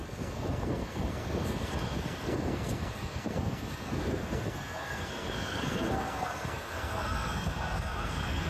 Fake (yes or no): yes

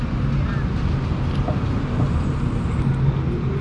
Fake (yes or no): no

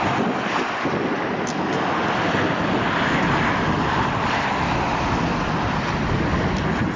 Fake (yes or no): no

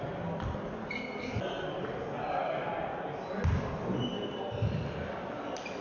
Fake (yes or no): no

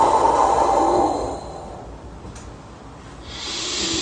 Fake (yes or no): no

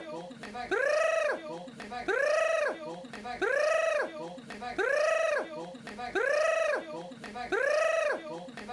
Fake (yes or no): no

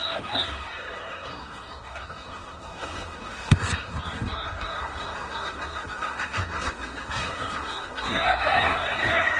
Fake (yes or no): yes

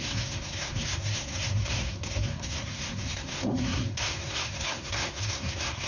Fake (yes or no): yes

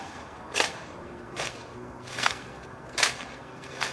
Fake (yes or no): yes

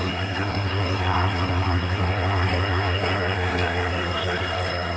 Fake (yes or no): yes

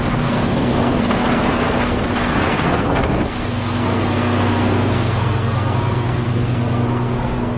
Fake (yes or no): yes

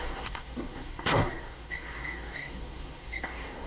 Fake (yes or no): yes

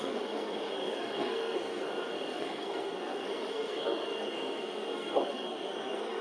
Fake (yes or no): yes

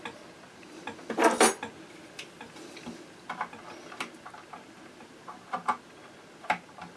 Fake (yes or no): no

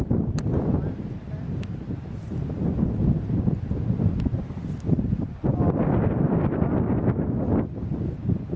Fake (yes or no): no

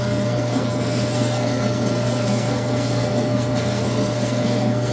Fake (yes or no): yes